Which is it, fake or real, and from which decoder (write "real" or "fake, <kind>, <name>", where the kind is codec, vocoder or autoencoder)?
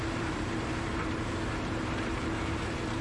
fake, vocoder, BigVGAN v2